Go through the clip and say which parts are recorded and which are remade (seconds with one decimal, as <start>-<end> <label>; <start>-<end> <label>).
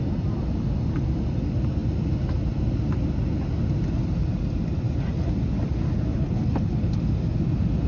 0.0-6.1 recorded; 6.1-7.0 remade; 7.0-7.9 recorded